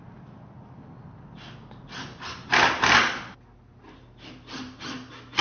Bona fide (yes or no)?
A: yes